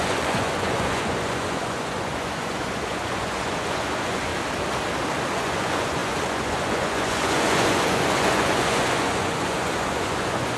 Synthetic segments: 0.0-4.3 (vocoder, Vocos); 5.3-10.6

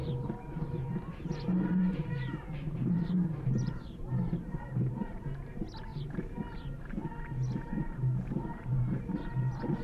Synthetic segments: 0.0-4.9 (vocoder, BigVGAN v2); 5.9-6.4; 8.7-9.2

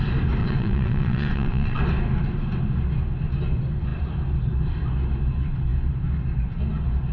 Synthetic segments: 0.4-1.8 (vocoder, WaveNeXt)

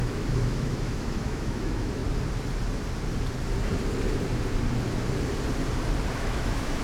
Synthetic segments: 0.0-2.0 (autoencoder, DAC-VAE); 6.1-6.8

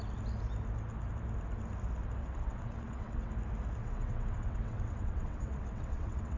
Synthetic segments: 2.2-3.3 (vocoder, WaveNeXt); 3.8-6.4